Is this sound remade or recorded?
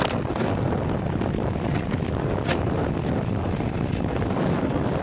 recorded